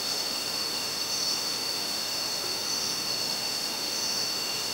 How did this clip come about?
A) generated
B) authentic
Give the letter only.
A